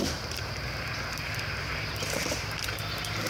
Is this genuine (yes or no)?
no